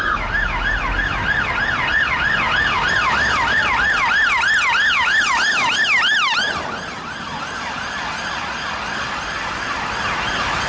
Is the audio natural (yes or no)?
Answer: yes